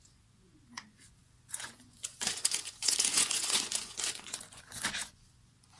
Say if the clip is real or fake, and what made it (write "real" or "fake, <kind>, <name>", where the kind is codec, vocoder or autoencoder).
fake, vocoder, Vocos